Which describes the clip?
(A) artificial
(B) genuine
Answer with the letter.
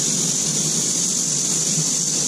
B